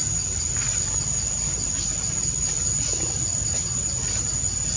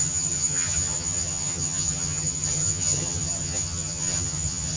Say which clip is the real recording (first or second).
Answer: first